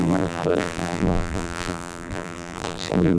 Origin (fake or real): fake